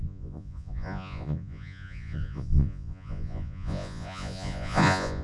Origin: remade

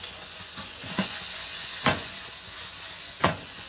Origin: remade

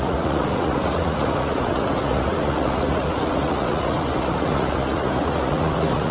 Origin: remade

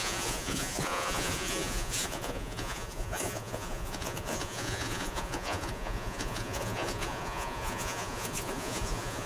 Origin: remade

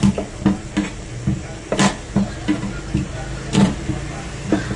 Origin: recorded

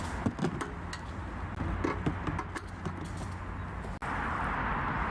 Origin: recorded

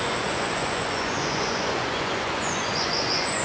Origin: remade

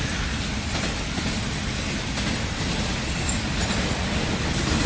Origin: recorded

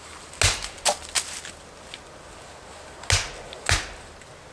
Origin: recorded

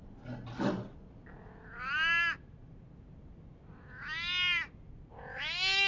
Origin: recorded